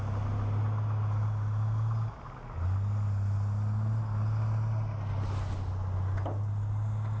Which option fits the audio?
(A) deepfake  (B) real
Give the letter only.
B